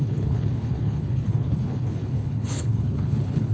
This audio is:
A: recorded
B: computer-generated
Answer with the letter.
B